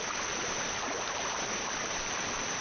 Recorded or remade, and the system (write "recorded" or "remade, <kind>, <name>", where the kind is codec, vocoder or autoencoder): remade, vocoder, BigVGAN v2